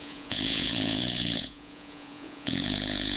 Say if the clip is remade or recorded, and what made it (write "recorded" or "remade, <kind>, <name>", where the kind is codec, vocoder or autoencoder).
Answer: remade, vocoder, Vocos